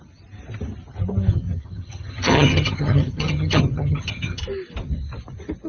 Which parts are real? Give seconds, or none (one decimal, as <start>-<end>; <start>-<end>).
0.0-1.3; 4.4-5.7